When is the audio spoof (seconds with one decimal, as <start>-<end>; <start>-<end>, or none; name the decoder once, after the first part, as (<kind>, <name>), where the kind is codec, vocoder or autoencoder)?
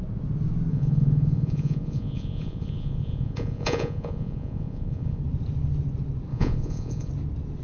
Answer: 0.7-5.2 (vocoder, Vocos); 6.3-7.1